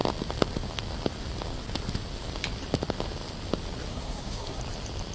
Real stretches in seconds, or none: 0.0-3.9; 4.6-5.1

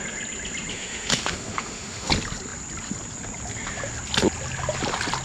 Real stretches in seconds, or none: 0.0-0.7; 2.1-5.2

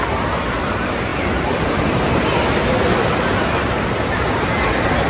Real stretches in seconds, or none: 0.0-1.1; 2.1-5.1

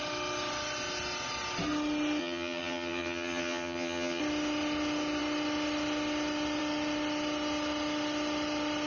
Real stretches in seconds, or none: 0.0-2.2; 4.2-8.9

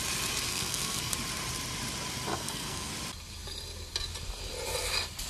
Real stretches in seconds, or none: 0.0-0.5; 1.1-2.3; 2.9-5.3

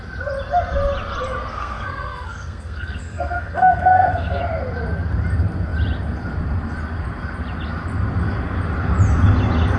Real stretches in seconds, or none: 0.0-1.5; 4.4-9.8